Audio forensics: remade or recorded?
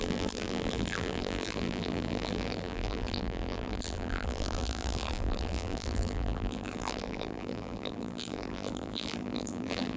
remade